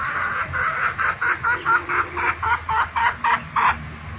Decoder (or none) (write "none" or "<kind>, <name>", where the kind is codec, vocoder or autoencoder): none